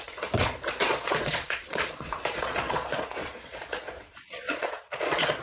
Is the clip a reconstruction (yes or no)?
yes